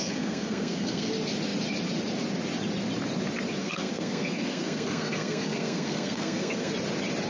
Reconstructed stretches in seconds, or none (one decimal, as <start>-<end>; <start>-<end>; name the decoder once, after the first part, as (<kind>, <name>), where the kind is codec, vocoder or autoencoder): 0.0-1.1 (codec, SNAC); 3.6-6.7